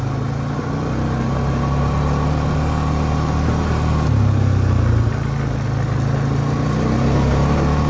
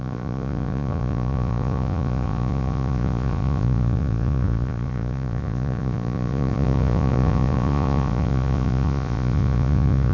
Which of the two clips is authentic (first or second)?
first